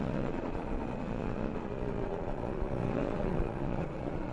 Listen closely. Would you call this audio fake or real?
fake